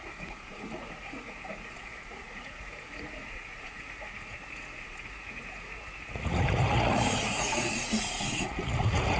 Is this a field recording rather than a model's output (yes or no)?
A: no